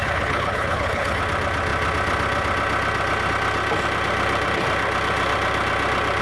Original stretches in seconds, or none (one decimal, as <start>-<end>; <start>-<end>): 1.2-6.2